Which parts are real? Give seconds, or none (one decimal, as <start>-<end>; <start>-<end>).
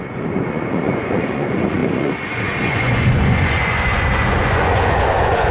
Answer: none